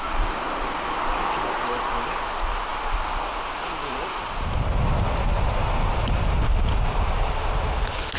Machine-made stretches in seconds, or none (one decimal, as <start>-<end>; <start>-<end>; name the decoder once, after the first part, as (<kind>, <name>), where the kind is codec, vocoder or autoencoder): none